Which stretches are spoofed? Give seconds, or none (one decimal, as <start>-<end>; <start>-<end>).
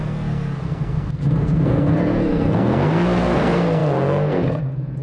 0.0-5.0